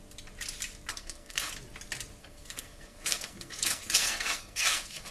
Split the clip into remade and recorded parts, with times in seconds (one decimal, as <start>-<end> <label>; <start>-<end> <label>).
0.0-0.9 recorded; 0.9-1.5 remade; 1.5-2.2 recorded; 2.2-5.1 remade